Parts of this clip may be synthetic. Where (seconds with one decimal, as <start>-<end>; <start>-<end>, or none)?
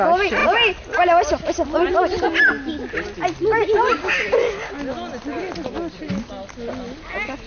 none